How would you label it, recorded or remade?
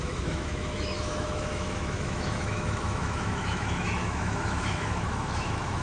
remade